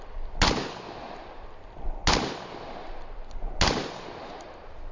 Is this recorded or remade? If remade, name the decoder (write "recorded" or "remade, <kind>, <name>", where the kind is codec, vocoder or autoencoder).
recorded